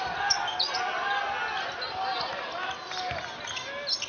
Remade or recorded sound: recorded